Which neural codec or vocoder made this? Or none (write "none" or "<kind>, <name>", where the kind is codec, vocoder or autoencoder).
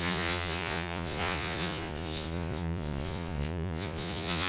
vocoder, Vocos